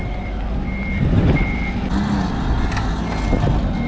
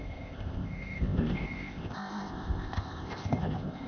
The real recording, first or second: first